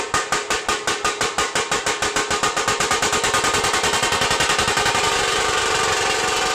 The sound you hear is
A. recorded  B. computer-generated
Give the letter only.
A